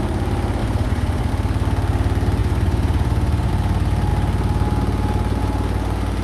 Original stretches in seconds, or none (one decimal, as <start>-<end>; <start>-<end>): 0.0-0.6; 1.3-2.4; 3.5-6.2